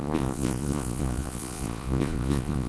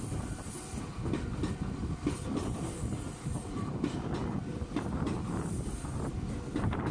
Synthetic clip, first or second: first